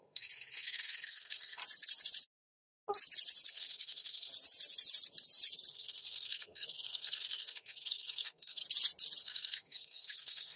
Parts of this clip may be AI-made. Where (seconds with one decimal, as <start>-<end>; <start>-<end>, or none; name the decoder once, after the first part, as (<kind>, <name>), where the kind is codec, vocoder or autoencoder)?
0.0-1.6 (codec, SNAC); 3.5-4.3; 5.7-8.6; 9.2-10.6